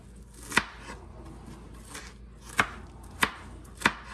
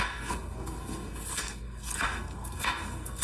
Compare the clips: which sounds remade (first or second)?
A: second